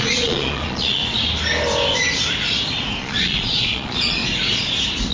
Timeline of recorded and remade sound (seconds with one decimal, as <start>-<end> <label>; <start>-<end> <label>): 0.0-1.0 remade; 1.0-3.0 recorded; 3.0-4.2 remade; 4.2-5.1 recorded